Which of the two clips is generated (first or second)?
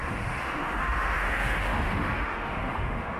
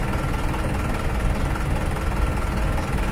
first